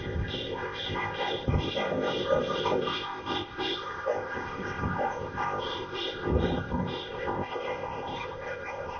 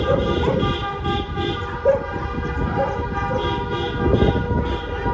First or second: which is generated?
first